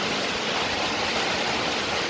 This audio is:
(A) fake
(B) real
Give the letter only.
B